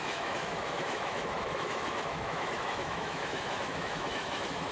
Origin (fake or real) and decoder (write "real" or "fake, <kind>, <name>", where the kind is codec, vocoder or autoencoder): fake, autoencoder, DAC-VAE